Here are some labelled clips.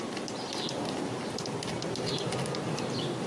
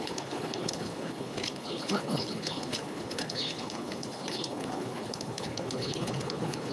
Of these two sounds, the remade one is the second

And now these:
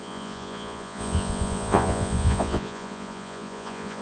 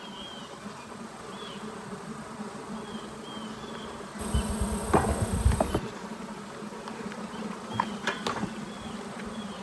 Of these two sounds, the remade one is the first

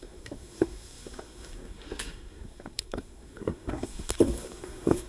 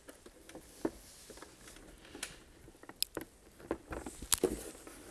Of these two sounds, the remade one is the first